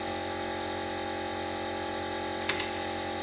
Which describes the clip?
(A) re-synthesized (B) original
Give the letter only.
B